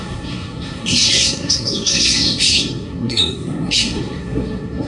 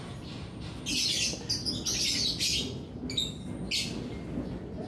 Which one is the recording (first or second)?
second